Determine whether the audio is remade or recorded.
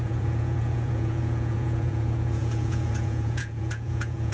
remade